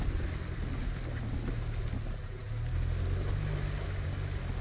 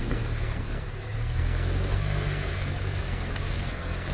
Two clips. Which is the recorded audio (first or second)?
first